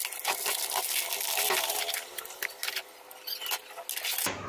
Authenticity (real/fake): real